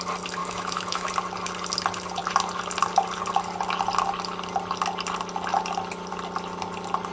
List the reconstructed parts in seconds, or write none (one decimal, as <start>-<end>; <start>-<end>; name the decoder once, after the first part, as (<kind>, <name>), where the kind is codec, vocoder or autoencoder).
0.4-1.1 (autoencoder, DAC-VAE)